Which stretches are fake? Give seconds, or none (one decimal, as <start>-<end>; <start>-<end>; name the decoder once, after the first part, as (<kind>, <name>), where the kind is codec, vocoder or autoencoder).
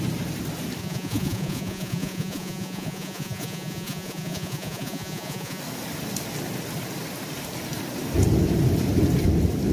0.8-5.6 (vocoder, Vocos)